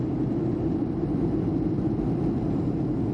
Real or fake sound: real